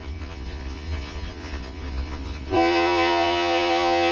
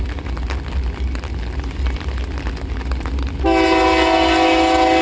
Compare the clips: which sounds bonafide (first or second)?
second